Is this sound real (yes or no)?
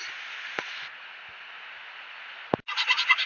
yes